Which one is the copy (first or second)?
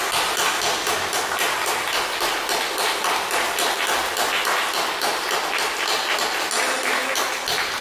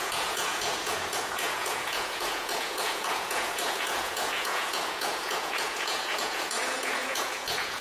second